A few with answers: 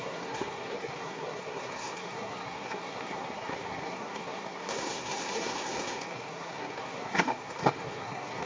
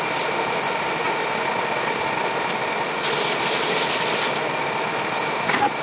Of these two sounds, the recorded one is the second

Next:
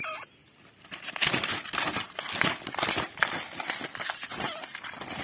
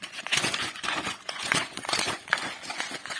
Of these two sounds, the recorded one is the first